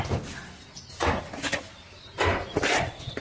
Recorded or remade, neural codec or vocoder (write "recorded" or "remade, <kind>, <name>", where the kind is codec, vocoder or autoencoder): recorded